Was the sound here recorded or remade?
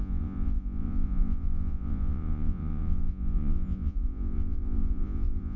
remade